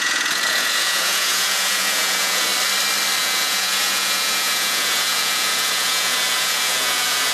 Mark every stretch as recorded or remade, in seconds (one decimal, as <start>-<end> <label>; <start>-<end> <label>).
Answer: 0.0-2.5 remade; 2.5-3.2 recorded; 3.2-7.3 remade